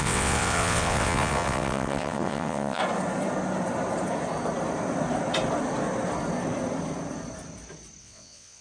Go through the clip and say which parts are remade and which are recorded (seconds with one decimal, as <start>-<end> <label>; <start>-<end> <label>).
0.0-2.8 remade; 2.8-8.0 recorded; 8.0-8.6 remade

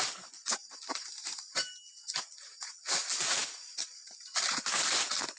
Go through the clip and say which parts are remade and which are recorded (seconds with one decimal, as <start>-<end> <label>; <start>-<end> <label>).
0.0-5.4 recorded

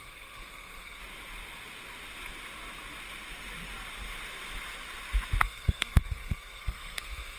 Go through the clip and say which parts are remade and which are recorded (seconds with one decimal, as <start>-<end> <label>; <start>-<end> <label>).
0.0-1.0 remade; 1.0-5.4 recorded; 5.4-7.4 remade

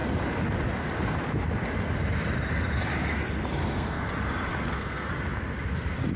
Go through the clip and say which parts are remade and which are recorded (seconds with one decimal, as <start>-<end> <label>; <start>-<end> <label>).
0.0-3.6 recorded; 3.6-4.1 remade; 4.1-4.5 recorded; 4.5-5.1 remade; 5.1-6.2 recorded

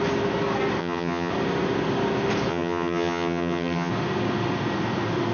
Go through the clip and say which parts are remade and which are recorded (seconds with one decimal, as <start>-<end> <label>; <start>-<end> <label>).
0.0-0.8 recorded; 0.8-1.3 remade; 1.3-2.5 recorded; 2.5-3.9 remade; 3.9-5.3 recorded

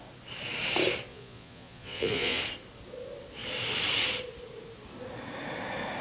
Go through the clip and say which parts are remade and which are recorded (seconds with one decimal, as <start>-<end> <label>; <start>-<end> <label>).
0.0-1.1 recorded; 1.1-2.4 remade; 2.4-6.0 recorded

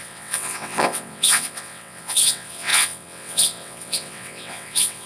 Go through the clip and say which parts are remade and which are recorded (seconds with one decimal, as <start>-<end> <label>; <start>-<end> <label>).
0.0-5.1 remade